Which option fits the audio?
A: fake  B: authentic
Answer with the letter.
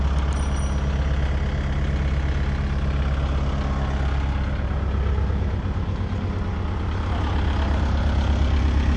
B